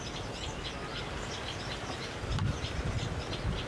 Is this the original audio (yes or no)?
yes